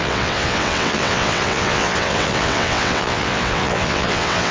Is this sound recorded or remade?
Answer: remade